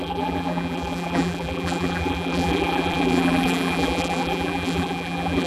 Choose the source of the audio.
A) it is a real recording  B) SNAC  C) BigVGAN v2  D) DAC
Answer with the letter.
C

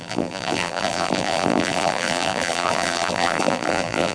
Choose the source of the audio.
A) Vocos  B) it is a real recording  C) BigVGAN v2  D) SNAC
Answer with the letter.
C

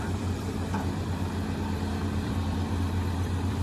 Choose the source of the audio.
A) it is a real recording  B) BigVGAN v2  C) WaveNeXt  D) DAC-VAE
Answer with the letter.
B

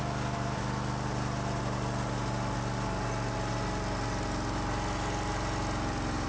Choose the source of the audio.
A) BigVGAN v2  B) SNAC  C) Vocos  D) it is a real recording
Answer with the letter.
D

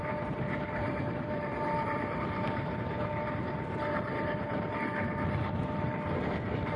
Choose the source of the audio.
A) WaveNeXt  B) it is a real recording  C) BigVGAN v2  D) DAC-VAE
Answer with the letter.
C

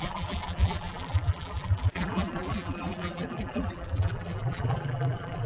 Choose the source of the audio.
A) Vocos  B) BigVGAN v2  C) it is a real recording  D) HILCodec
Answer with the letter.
B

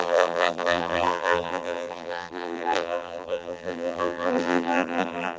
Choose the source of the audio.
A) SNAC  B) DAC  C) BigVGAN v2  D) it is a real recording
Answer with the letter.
C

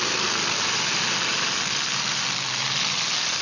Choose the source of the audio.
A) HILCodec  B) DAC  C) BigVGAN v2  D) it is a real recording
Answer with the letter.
C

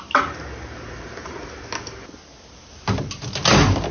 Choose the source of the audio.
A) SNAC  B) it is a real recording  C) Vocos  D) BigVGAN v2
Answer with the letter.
B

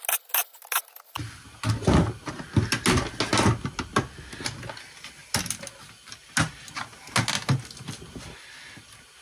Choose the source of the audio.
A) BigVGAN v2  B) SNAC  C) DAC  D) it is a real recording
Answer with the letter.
D